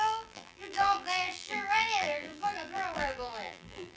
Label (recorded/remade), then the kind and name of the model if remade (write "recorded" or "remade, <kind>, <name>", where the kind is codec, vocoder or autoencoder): remade, vocoder, BigVGAN v2